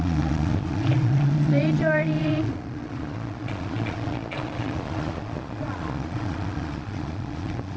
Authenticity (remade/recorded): remade